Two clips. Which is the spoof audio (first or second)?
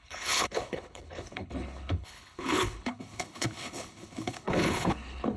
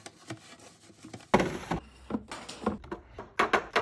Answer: first